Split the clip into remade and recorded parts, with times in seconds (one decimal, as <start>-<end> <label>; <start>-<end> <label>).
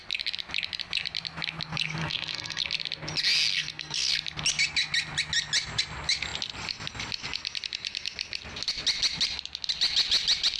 0.0-2.0 recorded; 2.0-2.6 remade; 2.6-3.5 recorded; 3.5-4.1 remade; 4.1-10.6 recorded